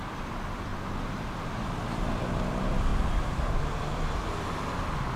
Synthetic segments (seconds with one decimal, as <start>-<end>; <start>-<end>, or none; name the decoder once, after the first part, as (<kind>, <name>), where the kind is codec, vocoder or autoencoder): 0.7-1.5 (vocoder, BigVGAN v2); 2.9-3.6